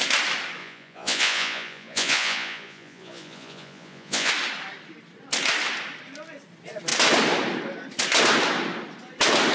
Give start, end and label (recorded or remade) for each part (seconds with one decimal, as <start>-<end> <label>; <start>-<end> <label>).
0.0-0.6 recorded; 0.6-4.3 remade; 4.3-9.5 recorded